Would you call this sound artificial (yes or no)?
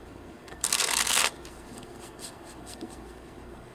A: yes